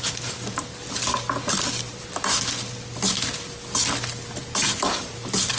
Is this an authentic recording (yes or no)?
yes